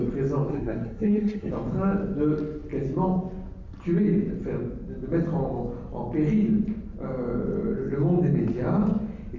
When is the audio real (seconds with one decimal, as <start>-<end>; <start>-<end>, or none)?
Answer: 0.0-0.5; 1.5-9.4